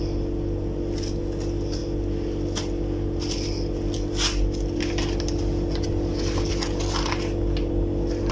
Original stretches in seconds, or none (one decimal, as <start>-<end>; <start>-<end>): 0.0-8.3